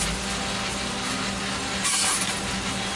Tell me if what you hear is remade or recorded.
recorded